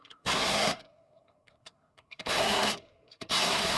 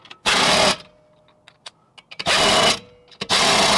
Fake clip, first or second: first